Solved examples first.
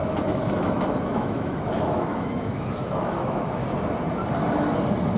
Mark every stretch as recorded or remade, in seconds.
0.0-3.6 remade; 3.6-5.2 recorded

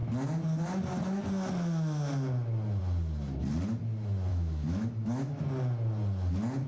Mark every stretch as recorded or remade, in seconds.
0.0-4.3 recorded; 4.3-5.4 remade; 5.4-6.7 recorded

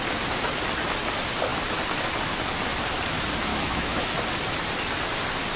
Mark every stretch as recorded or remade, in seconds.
0.0-3.5 recorded; 3.5-4.0 remade; 4.0-5.6 recorded

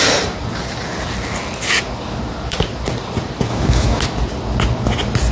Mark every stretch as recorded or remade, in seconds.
0.0-3.5 recorded; 3.5-4.0 remade; 4.0-5.3 recorded